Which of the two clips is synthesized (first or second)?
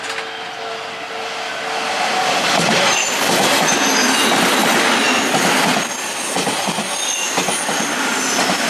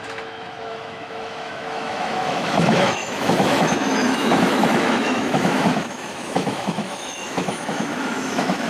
second